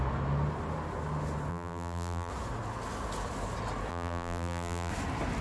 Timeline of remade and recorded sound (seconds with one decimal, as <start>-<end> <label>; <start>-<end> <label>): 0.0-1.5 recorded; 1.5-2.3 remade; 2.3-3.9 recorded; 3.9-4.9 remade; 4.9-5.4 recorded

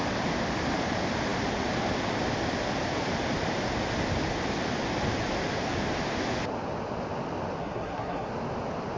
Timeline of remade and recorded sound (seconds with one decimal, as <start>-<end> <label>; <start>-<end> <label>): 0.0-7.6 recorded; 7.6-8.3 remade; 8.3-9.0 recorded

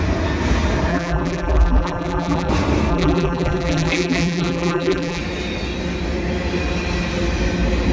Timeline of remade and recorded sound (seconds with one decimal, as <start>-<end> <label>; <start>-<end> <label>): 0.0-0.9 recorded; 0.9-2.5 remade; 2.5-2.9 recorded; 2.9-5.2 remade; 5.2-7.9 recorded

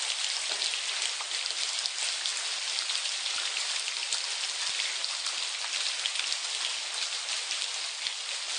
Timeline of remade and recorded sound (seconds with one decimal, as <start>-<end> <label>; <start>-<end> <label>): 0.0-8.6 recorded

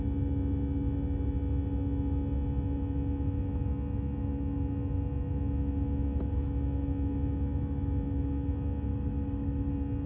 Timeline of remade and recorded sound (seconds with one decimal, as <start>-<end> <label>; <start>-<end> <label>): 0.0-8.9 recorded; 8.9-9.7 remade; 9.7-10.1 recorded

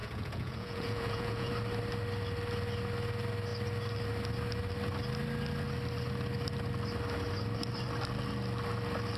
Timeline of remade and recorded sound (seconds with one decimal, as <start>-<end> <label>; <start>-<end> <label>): 0.0-1.5 remade; 1.5-9.2 recorded

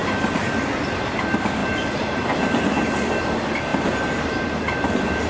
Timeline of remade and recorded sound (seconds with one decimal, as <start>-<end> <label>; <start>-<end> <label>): 0.0-1.2 remade; 1.2-1.6 recorded; 1.6-2.6 remade; 2.6-3.7 recorded; 3.7-5.3 remade

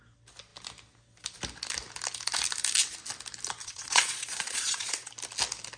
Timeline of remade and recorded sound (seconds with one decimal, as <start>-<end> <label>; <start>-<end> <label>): 0.0-3.6 recorded; 3.6-5.1 remade; 5.1-5.8 recorded